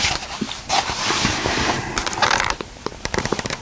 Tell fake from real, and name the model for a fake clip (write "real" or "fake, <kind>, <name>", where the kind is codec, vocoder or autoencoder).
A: fake, vocoder, BigVGAN v2